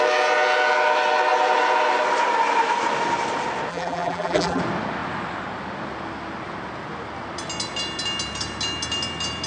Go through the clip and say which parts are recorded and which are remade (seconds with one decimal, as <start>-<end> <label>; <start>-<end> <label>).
0.0-3.7 recorded; 3.7-4.6 remade; 4.6-9.5 recorded